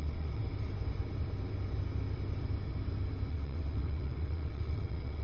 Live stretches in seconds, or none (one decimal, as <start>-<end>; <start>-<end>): 0.4-3.3